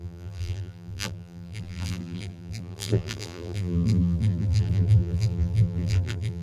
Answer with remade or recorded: remade